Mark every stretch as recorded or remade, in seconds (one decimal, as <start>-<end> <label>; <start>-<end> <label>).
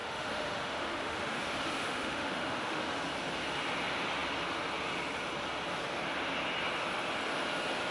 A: 0.0-3.0 remade; 3.0-7.9 recorded